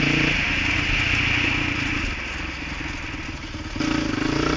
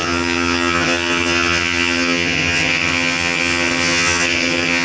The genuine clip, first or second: first